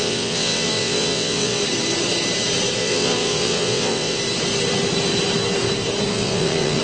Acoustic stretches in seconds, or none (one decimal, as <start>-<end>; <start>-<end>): 1.6-2.8; 4.2-6.1

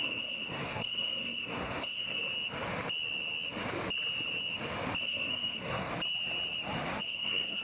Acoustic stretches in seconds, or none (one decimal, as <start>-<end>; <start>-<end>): 2.2-5.0; 5.9-7.0

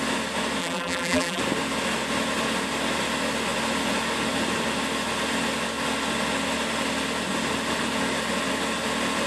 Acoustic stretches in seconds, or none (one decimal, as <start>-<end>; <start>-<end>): 0.0-0.6; 1.4-9.3

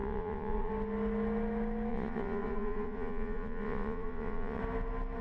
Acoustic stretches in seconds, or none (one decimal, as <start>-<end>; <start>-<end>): 0.7-1.9; 4.6-5.2

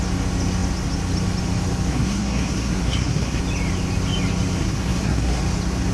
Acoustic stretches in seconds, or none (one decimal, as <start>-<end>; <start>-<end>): 0.0-1.9; 3.4-4.6; 5.4-5.9

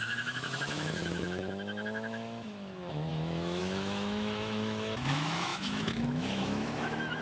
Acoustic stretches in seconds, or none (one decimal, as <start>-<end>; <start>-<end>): none